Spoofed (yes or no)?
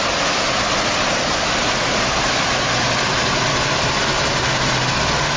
no